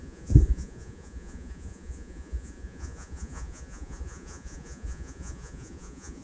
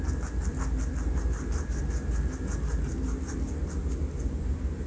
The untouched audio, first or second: second